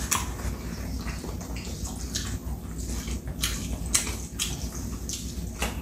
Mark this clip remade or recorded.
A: recorded